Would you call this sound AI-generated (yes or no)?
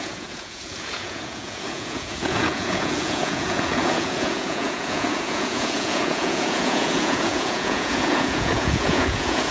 yes